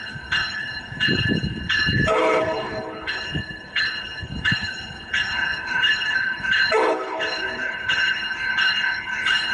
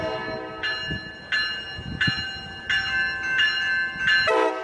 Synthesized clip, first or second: first